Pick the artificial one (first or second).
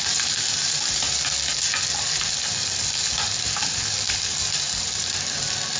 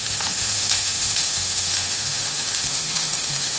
second